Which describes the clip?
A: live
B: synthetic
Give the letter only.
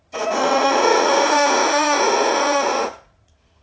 B